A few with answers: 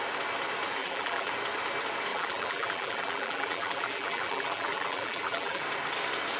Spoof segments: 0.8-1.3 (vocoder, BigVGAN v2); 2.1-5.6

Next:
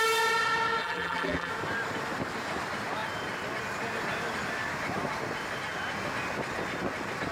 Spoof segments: 0.8-1.5 (vocoder, BigVGAN v2)

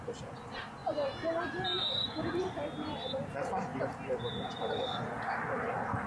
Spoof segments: 0.0-3.7 (vocoder, BigVGAN v2); 4.3-6.1

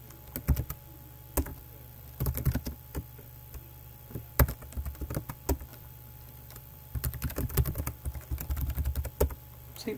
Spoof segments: 1.5-4.3 (vocoder, BigVGAN v2); 5.7-7.8

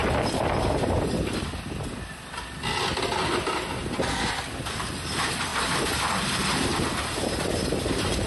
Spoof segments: 4.6-5.5 (vocoder, BigVGAN v2); 6.1-6.7; 7.4-8.3

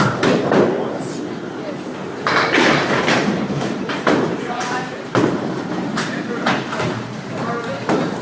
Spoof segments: 3.2-8.2 (vocoder, BigVGAN v2)

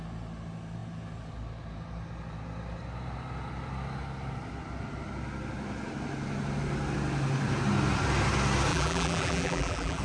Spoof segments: 8.7-10.0 (vocoder, BigVGAN v2)

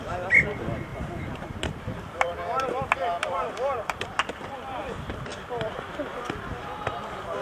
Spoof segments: 0.9-4.8 (vocoder, BigVGAN v2)